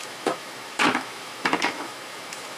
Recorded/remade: remade